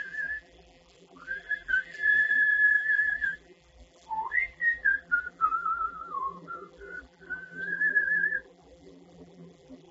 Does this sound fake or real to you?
fake